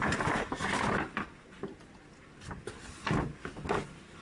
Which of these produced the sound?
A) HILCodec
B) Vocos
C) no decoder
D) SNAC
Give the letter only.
C